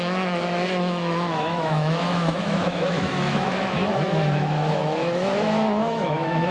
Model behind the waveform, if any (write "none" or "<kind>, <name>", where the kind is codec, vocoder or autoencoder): autoencoder, DAC-VAE